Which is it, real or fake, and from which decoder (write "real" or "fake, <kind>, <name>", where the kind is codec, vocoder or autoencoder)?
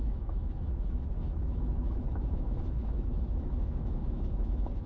fake, autoencoder, DAC-VAE